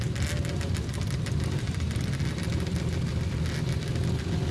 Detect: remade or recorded recorded